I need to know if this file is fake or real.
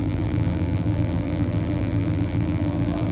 fake